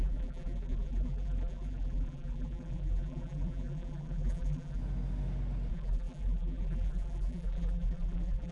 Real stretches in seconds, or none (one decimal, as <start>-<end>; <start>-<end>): 4.8-5.7